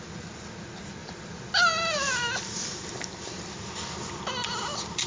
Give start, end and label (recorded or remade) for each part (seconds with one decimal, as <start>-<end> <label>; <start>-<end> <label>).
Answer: 0.0-1.0 recorded; 1.0-4.1 remade; 4.1-5.1 recorded